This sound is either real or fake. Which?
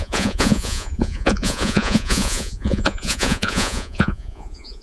fake